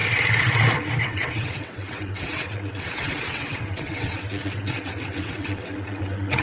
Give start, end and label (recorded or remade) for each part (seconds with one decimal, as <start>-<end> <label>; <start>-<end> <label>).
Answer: 0.0-1.0 recorded; 1.0-6.4 remade